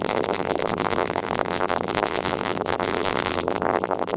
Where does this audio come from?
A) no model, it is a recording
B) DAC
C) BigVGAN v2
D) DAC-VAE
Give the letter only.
C